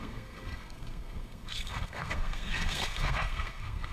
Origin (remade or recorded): remade